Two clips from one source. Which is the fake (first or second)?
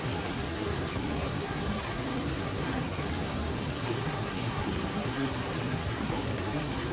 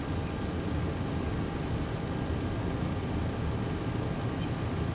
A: first